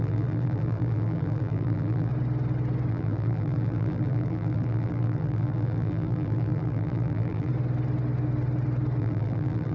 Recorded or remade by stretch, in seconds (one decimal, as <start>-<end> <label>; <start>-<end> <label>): 0.0-2.1 remade; 2.1-2.9 recorded; 2.9-7.5 remade; 7.5-9.0 recorded; 9.0-9.7 remade